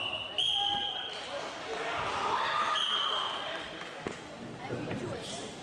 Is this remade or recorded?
remade